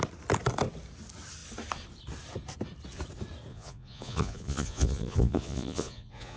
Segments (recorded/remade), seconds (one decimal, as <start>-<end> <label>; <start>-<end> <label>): 0.0-3.5 recorded; 3.5-6.4 remade